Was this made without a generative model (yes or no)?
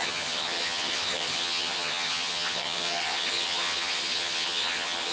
no